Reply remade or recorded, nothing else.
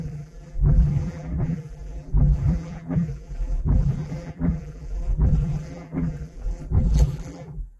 remade